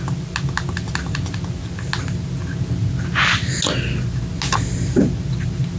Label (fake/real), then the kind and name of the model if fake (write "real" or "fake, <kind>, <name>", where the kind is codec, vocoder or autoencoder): real